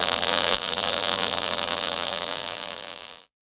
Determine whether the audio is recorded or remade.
remade